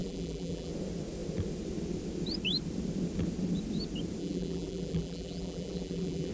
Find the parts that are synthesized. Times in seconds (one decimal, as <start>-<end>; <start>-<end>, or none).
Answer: 0.0-0.7; 4.2-6.3